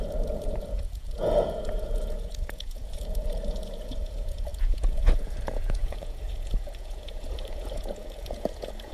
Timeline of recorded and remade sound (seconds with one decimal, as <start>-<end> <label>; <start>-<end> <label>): 0.0-8.9 remade